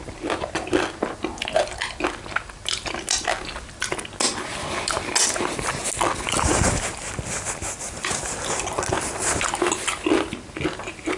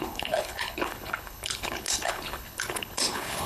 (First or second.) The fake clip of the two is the second